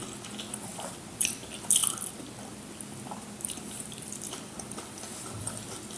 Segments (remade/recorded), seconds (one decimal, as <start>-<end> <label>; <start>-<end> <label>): 0.0-0.5 recorded; 0.5-6.0 remade